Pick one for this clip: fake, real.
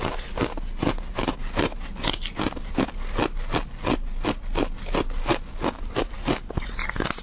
real